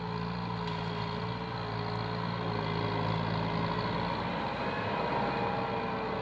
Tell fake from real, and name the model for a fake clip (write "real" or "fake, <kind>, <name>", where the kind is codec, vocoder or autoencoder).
real